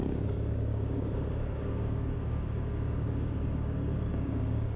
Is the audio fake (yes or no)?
yes